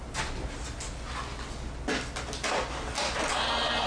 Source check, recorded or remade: recorded